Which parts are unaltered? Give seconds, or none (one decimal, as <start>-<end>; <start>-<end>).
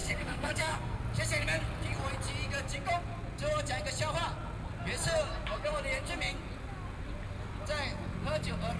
1.0-8.8